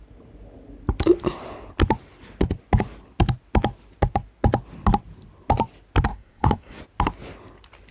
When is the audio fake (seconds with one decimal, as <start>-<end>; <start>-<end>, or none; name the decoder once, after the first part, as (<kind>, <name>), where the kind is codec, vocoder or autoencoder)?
6.1-6.8 (codec, SNAC)